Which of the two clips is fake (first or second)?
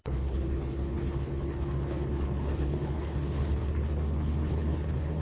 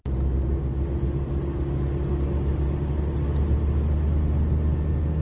first